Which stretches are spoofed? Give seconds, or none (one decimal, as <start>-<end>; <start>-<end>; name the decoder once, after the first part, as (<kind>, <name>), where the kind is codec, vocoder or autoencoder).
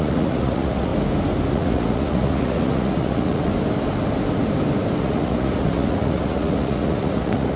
0.0-0.9 (vocoder, Vocos); 1.5-3.5; 5.0-7.6